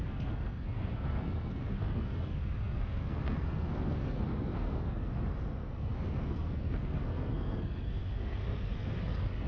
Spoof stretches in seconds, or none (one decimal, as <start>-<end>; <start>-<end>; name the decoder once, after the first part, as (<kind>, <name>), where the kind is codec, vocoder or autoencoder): 0.0-9.5 (codec, SNAC)